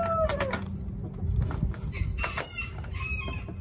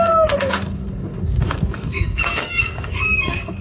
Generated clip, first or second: second